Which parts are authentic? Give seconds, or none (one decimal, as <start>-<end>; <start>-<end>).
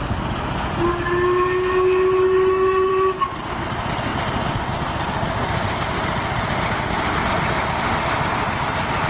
0.0-2.2; 2.9-9.1